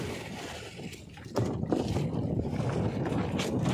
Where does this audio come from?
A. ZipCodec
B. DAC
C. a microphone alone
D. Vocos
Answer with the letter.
C